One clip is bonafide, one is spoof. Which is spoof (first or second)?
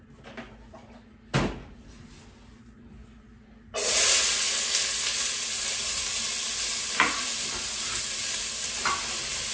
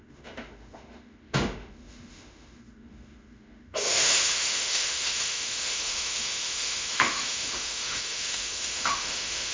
second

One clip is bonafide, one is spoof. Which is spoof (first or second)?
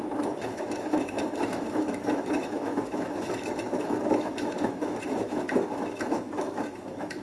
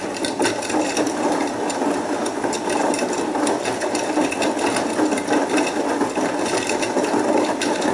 first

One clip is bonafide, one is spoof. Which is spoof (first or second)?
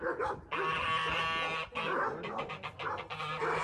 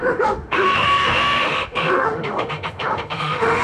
second